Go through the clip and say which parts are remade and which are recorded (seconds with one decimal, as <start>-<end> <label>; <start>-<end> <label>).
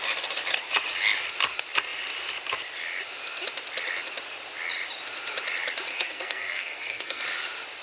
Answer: 0.0-5.9 recorded; 5.9-7.2 remade; 7.2-7.8 recorded